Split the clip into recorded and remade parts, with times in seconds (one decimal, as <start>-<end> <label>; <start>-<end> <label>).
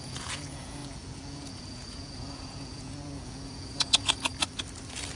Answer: 0.0-4.3 remade; 4.3-5.2 recorded